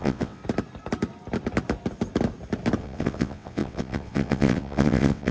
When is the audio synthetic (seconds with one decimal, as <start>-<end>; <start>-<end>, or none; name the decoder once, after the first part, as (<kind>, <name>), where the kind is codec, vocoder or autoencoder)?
0.0-0.4 (vocoder, WaveNeXt); 2.8-5.3